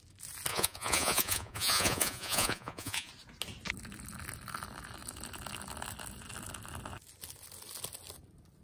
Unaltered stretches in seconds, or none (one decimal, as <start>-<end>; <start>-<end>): 0.0-0.5; 3.1-8.6